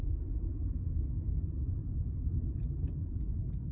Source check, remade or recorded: recorded